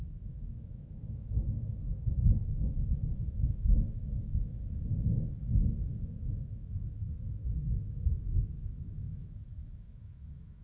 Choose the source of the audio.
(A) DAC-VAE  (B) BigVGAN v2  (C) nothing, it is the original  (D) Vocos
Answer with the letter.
A